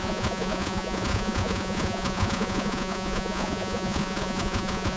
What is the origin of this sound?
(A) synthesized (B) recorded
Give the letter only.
A